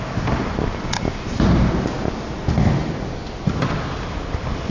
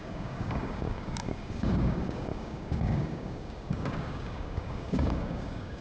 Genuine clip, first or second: first